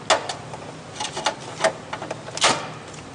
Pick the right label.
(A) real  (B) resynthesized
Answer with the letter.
A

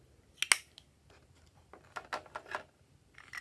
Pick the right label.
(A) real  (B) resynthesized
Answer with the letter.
A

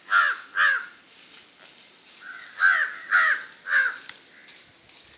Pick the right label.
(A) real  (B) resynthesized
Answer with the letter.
A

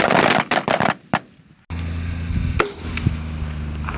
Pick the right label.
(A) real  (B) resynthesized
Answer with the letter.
A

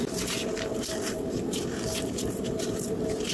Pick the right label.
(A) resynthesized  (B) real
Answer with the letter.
A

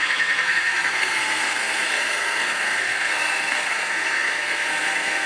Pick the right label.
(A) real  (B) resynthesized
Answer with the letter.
B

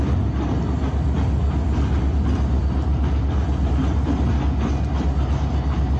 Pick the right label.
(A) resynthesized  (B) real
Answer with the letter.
B